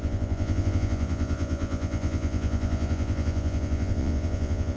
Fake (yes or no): yes